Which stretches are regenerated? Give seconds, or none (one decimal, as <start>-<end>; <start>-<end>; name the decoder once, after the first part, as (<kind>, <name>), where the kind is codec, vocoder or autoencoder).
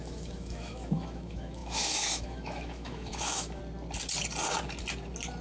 0.0-3.6 (autoencoder, DAC-VAE)